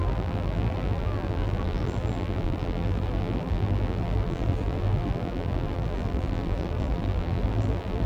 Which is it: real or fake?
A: fake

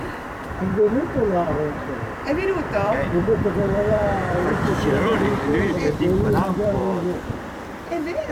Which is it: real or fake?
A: fake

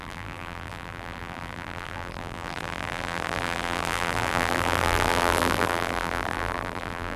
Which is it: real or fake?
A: fake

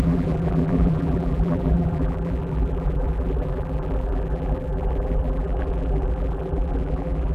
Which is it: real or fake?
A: fake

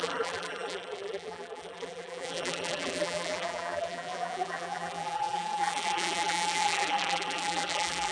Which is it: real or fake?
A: fake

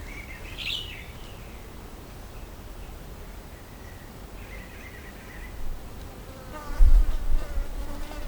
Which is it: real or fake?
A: fake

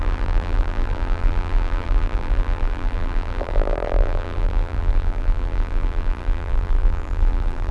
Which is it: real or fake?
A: fake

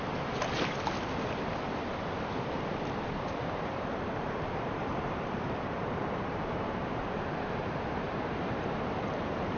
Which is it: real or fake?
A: fake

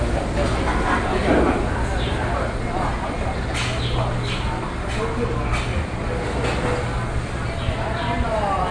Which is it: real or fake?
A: real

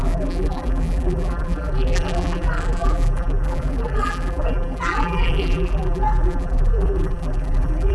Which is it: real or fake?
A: fake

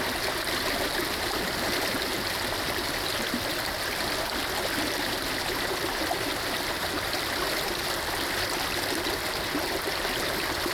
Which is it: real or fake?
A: real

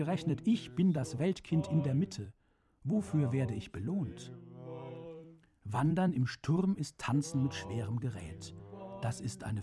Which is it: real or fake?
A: fake